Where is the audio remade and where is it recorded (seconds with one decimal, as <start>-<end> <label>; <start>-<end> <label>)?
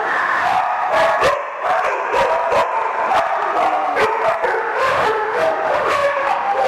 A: 0.0-0.6 remade; 0.6-4.6 recorded; 4.6-6.7 remade